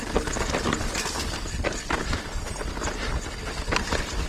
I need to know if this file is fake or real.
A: real